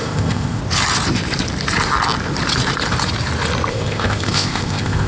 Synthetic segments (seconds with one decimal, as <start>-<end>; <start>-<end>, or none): 0.0-0.6; 3.7-5.1